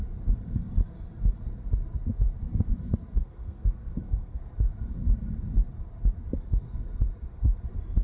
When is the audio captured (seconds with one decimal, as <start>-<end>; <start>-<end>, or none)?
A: 0.0-3.2; 4.4-8.0